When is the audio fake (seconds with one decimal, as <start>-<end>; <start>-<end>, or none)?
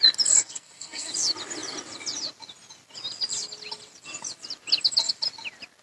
0.4-1.1